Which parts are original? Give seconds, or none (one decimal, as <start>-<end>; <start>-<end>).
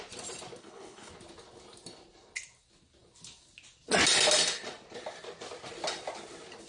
0.0-0.6; 1.1-6.7